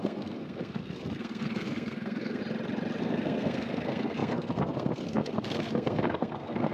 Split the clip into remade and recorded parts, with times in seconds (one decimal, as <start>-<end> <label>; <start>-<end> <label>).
0.0-2.4 remade; 2.4-3.0 recorded; 3.0-6.7 remade

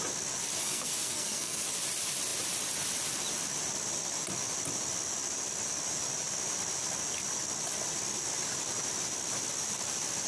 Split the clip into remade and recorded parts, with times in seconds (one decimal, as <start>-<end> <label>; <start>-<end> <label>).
0.0-0.6 recorded; 0.6-1.7 remade; 1.7-10.3 recorded

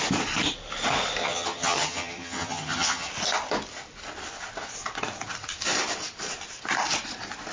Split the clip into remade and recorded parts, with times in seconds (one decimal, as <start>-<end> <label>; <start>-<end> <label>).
0.0-1.2 recorded; 1.2-3.1 remade; 3.1-7.5 recorded